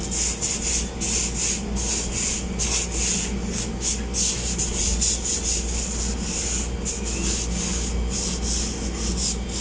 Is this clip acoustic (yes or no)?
yes